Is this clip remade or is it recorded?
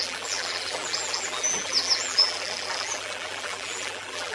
remade